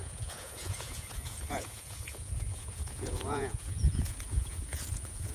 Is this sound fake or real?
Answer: fake